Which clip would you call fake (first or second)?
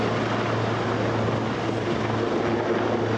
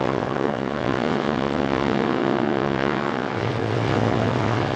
second